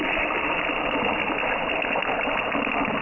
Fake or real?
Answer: fake